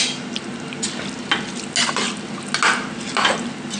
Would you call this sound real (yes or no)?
yes